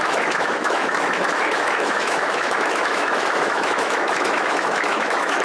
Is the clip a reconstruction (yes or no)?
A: yes